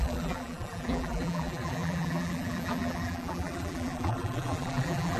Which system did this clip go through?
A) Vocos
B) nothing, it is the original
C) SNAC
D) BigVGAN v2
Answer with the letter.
D